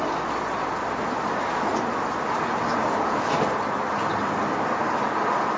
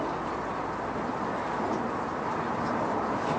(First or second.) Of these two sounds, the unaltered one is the first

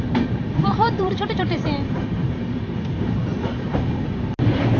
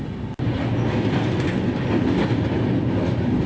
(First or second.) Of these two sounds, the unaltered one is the second